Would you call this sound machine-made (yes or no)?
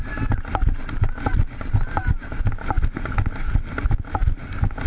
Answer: no